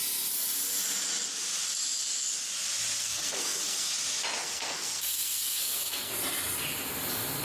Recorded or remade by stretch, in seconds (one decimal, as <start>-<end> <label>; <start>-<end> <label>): 0.0-3.0 recorded; 3.0-3.9 remade; 3.9-4.4 recorded; 4.4-6.1 remade; 6.1-7.4 recorded